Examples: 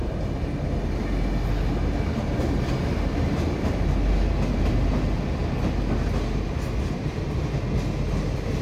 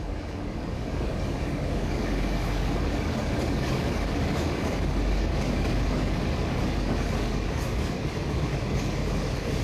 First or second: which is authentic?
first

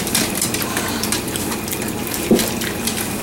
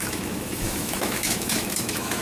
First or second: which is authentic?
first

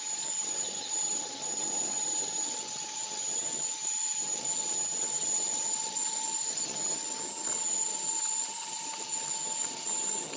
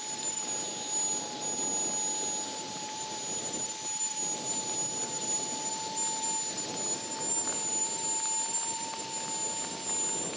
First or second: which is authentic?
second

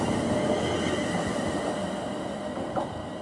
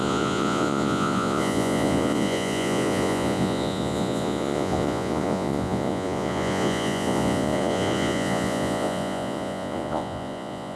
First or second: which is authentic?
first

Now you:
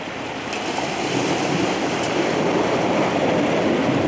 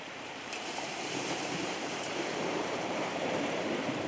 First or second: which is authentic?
first